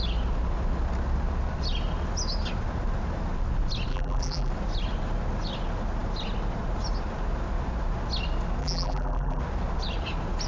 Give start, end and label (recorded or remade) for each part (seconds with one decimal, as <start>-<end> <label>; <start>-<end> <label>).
0.0-3.9 recorded; 3.9-4.5 remade; 4.5-8.6 recorded; 8.6-9.4 remade; 9.4-10.5 recorded